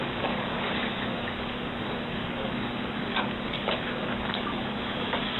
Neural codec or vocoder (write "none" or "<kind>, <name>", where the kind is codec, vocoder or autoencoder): codec, DAC